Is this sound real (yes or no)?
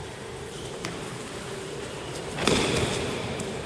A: no